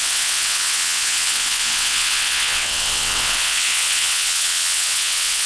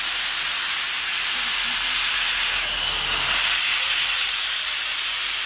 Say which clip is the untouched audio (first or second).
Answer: second